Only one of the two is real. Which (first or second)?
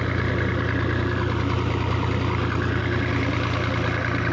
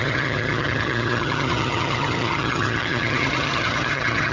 first